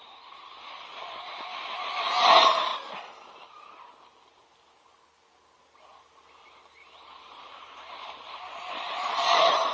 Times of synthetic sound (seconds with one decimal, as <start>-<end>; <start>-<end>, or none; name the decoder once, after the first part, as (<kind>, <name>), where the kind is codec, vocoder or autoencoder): none